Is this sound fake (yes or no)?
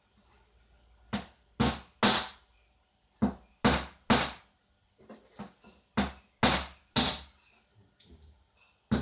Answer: no